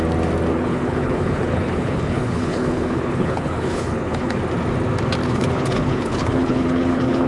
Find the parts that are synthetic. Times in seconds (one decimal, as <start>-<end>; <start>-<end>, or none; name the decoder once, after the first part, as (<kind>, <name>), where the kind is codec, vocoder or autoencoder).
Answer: 0.5-4.4 (codec, HILCodec); 5.2-7.3